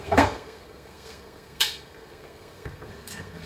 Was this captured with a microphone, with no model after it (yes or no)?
no